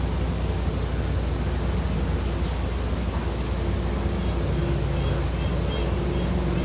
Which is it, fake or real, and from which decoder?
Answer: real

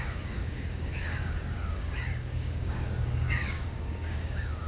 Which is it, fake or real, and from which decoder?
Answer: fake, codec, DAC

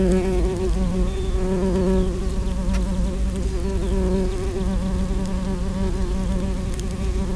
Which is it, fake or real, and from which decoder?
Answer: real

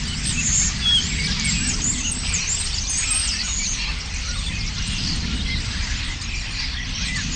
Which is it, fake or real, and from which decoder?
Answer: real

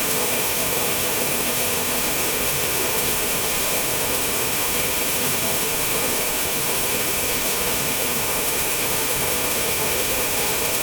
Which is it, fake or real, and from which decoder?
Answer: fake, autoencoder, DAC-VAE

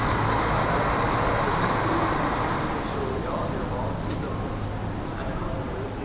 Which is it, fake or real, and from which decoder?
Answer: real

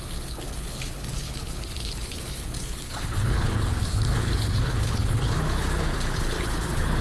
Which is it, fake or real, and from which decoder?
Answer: fake, codec, HILCodec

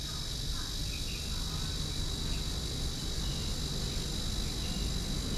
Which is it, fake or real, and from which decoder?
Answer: real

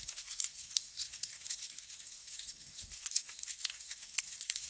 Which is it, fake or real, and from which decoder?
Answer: fake, codec, SNAC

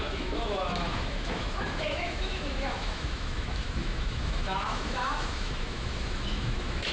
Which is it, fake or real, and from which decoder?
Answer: fake, autoencoder, DAC-VAE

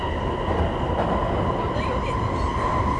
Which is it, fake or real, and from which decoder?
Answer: real